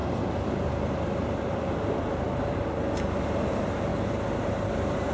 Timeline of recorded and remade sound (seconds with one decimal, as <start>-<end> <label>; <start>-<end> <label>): 0.0-5.1 recorded

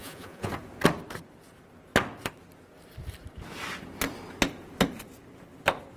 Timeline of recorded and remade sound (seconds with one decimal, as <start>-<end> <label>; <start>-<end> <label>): 0.0-0.5 remade; 0.5-6.0 recorded

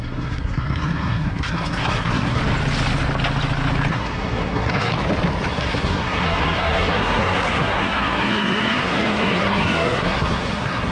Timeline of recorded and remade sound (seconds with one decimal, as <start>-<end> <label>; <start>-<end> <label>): 0.0-2.4 remade; 2.4-3.9 recorded; 3.9-4.9 remade; 4.9-5.5 recorded; 5.5-10.9 remade